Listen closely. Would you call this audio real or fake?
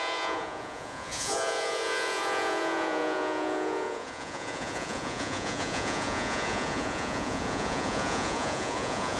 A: fake